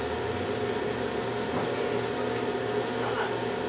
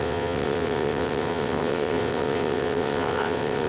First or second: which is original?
first